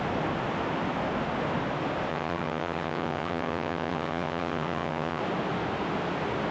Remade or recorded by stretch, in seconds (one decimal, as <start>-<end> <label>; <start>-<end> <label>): 0.0-2.1 recorded; 2.1-5.2 remade; 5.2-6.5 recorded